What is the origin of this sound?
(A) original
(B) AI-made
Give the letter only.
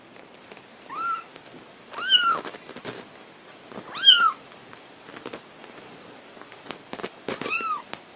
A